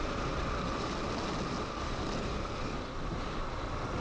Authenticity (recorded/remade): recorded